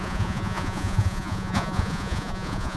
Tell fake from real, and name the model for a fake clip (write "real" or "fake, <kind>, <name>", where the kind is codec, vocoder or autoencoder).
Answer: fake, vocoder, Vocos